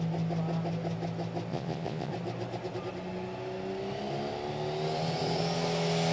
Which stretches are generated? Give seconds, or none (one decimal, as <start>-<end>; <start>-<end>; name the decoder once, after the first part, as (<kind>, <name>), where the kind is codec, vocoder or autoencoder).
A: 1.5-2.1 (vocoder, Vocos)

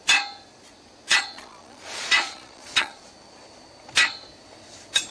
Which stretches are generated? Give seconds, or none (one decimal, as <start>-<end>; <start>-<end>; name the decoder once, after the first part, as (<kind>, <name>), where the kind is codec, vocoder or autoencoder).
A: 1.1-3.0 (vocoder, Vocos)

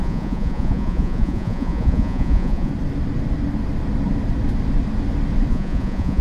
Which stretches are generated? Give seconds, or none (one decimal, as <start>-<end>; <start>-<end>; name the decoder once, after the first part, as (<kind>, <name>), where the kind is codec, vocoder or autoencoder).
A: 0.0-2.7 (vocoder, Vocos); 5.5-6.2

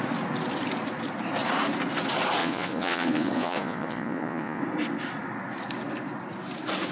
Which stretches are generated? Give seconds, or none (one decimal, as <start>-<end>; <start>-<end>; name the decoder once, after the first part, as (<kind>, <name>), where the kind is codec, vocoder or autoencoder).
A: 2.4-4.6 (vocoder, Vocos)

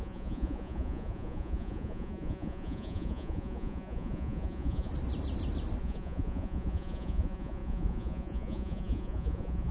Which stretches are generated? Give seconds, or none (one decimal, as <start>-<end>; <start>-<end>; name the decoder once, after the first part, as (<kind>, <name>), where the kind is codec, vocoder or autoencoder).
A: 0.0-4.9 (vocoder, Vocos); 5.8-9.7

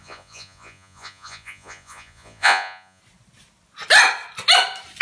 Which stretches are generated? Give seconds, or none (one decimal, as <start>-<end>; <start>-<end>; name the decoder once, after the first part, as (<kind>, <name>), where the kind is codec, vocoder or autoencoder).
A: 0.0-3.0 (vocoder, Vocos)

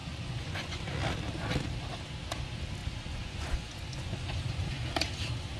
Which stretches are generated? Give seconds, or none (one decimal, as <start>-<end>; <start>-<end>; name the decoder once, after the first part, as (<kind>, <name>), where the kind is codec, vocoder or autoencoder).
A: 0.0-0.8 (vocoder, Vocos); 2.8-4.9